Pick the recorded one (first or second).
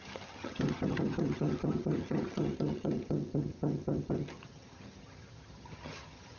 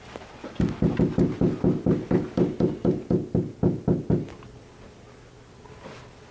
second